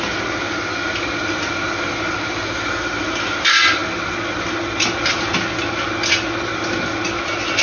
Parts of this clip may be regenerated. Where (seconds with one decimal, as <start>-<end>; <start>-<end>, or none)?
none